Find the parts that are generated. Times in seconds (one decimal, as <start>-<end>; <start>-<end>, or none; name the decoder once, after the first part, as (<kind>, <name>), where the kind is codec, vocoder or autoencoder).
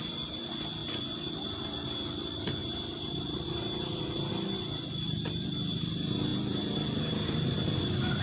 2.6-4.3 (vocoder, BigVGAN v2); 6.3-8.2